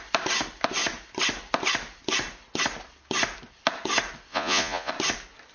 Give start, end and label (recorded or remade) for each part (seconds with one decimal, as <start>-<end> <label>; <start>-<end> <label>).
0.0-4.3 recorded; 4.3-4.9 remade; 4.9-5.5 recorded